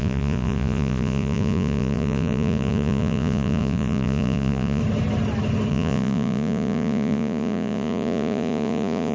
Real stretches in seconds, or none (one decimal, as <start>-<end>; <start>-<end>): 4.8-5.7